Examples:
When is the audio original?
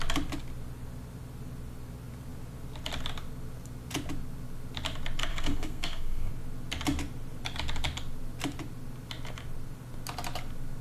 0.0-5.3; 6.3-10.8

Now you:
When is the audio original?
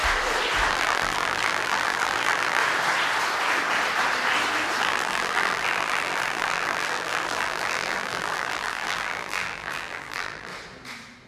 0.0-0.7; 2.6-4.8; 10.5-11.3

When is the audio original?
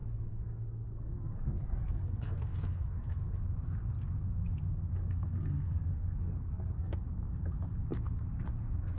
3.4-4.9; 7.1-9.0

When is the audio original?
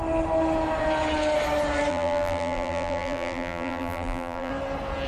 0.0-1.9; 4.5-5.1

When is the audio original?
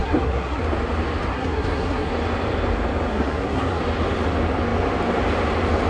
0.6-1.3; 2.1-3.1; 3.8-5.9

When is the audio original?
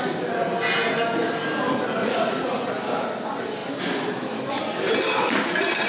0.0-2.0; 2.7-5.9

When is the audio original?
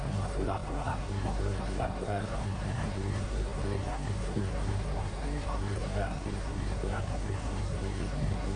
none